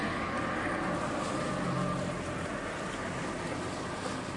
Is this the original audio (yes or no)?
yes